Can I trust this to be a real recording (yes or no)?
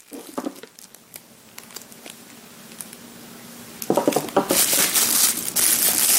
yes